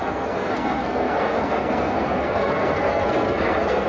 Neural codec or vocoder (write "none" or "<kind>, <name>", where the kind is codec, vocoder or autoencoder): codec, SNAC